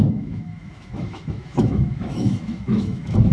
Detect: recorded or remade remade